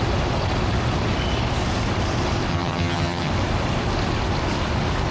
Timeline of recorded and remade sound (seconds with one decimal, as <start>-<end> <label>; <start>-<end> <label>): 0.0-2.5 recorded; 2.5-3.3 remade; 3.3-5.1 recorded